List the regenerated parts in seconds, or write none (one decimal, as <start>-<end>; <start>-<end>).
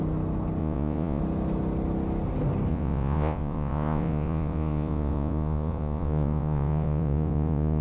0.6-1.2; 2.7-7.8